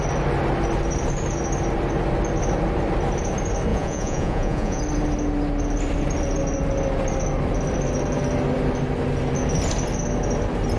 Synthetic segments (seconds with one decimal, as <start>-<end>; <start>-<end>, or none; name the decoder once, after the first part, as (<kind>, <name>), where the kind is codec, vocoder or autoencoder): 3.7-4.8 (vocoder, Vocos)